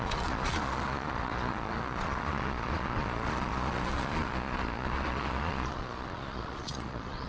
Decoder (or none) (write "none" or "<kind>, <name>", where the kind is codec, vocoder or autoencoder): vocoder, Vocos